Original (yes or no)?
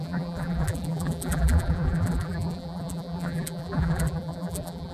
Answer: no